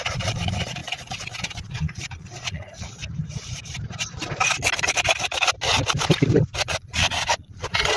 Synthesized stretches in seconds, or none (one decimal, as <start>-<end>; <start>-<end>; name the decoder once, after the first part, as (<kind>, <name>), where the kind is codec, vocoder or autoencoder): 0.0-3.0 (vocoder, Vocos); 6.6-8.0